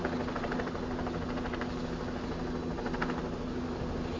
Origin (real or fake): real